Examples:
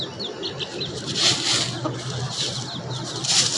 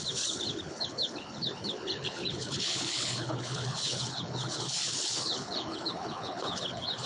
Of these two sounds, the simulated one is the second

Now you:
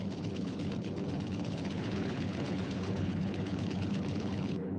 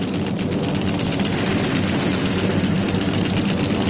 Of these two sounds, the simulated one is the first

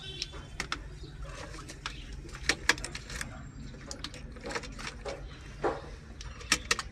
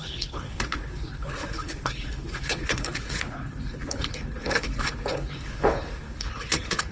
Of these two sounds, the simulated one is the second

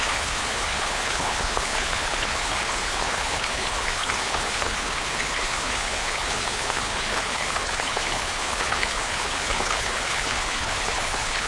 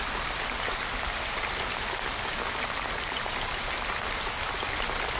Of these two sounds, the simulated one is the first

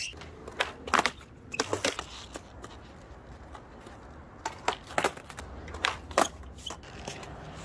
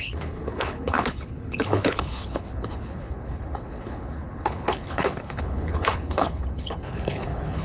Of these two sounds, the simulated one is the second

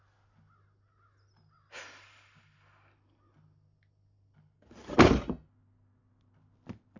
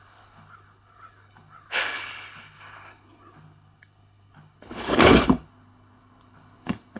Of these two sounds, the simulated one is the second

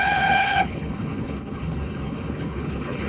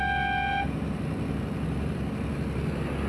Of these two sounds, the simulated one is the first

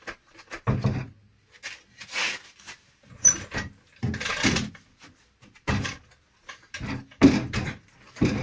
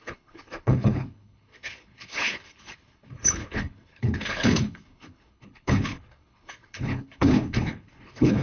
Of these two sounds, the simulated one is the second